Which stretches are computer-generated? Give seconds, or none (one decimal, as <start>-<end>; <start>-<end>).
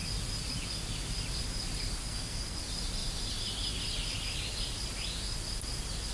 2.0-2.6